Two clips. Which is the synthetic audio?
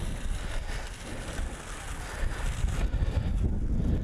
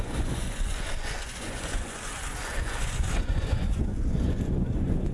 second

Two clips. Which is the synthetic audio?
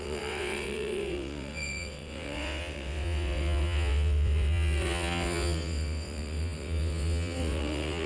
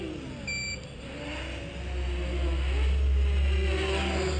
first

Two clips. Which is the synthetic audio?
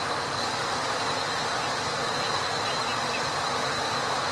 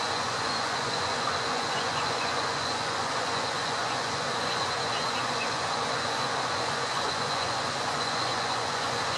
second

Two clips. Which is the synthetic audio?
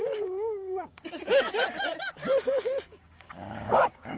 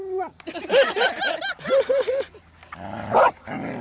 first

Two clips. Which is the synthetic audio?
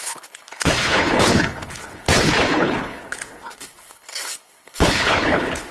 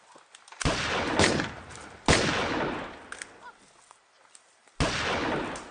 first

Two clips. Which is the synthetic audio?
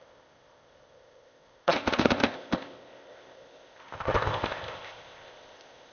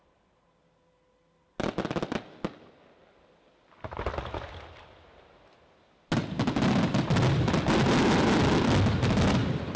first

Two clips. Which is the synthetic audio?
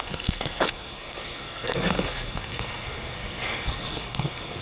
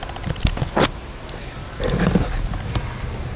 first